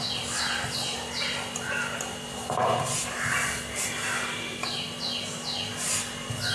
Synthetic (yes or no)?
no